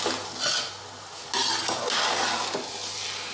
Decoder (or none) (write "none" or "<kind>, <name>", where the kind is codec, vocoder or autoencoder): none